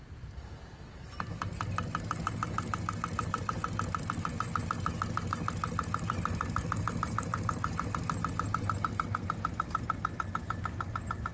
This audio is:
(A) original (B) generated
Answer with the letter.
A